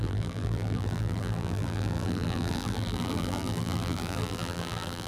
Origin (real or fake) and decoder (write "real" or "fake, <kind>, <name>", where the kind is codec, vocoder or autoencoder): fake, vocoder, BigVGAN v2